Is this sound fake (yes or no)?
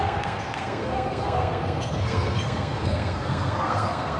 yes